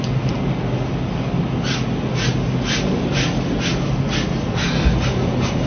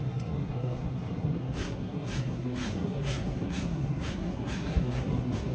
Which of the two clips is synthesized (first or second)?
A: second